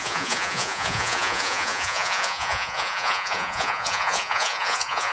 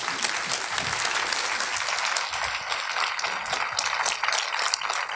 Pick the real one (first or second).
second